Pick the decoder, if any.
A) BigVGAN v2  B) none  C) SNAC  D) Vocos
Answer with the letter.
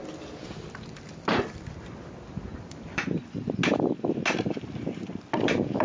B